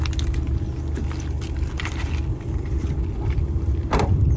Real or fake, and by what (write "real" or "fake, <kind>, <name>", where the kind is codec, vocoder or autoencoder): fake, vocoder, BigVGAN v2